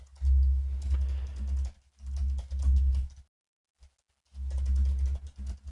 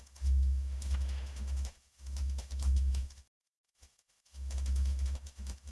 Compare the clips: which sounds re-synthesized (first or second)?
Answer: second